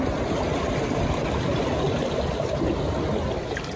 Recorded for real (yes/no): yes